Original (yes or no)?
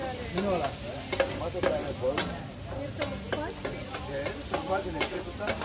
yes